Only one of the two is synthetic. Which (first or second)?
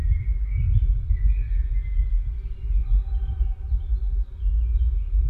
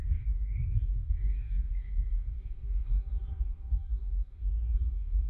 second